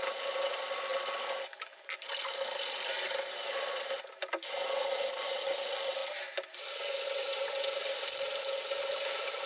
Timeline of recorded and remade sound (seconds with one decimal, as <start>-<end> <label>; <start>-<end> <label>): 0.0-9.5 recorded